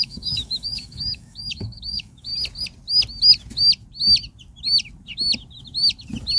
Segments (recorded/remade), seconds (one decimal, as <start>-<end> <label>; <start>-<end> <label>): 0.0-2.3 remade; 2.3-6.4 recorded